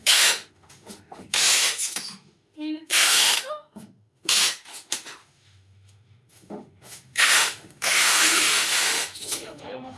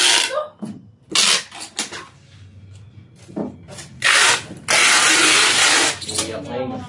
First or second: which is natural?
second